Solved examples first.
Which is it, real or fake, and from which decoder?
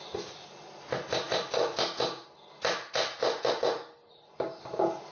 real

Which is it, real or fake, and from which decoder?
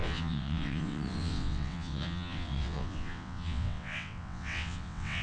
fake, vocoder, WaveNeXt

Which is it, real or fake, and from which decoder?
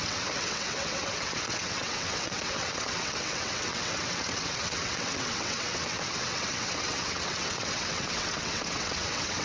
fake, vocoder, WaveNeXt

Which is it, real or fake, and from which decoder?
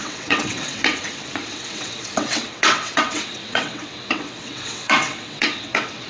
fake, vocoder, WaveNeXt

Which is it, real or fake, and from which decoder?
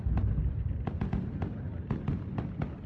real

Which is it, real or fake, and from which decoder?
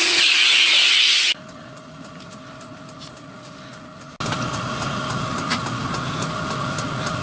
real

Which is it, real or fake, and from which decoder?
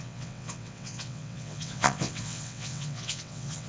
fake, vocoder, WaveNeXt